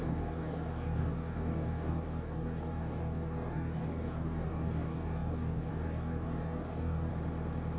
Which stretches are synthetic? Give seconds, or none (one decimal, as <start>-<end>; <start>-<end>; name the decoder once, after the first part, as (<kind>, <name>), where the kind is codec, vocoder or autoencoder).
0.0-7.1 (codec, DAC)